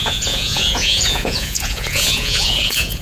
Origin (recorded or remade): remade